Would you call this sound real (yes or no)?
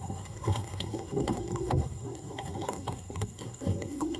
no